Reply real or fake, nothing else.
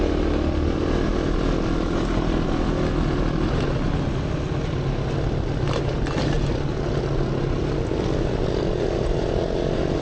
real